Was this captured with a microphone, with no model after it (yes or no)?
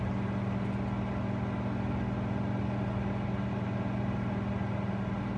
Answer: yes